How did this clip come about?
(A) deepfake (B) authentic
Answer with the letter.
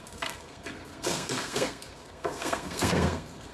A